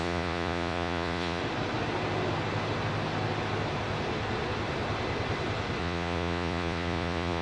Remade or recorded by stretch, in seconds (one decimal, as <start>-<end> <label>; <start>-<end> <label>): 0.0-1.4 remade; 1.4-5.8 recorded; 5.8-7.4 remade